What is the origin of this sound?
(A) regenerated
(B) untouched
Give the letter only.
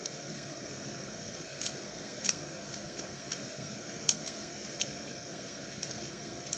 A